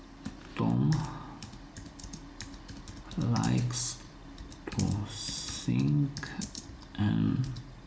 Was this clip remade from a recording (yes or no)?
no